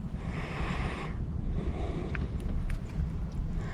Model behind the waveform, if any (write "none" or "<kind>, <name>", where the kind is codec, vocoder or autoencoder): vocoder, BigVGAN v2